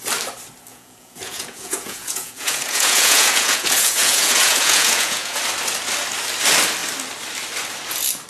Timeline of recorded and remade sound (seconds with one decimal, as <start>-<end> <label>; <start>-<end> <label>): 0.0-0.7 recorded; 0.7-5.4 remade; 5.4-8.3 recorded